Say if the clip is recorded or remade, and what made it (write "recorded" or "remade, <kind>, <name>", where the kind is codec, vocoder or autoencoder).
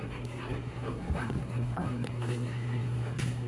remade, codec, SNAC